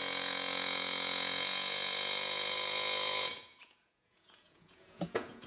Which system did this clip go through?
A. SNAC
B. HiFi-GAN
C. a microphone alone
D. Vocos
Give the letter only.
D